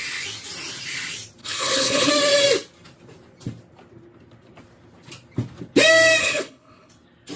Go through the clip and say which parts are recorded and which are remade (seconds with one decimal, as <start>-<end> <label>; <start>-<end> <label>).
0.0-1.4 recorded; 1.4-2.1 remade; 2.1-6.2 recorded; 6.2-6.9 remade; 6.9-7.4 recorded